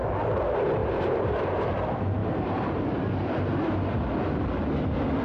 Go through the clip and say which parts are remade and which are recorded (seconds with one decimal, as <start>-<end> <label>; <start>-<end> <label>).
0.0-0.8 recorded; 0.8-1.4 remade; 1.4-2.2 recorded; 2.2-2.9 remade; 2.9-5.2 recorded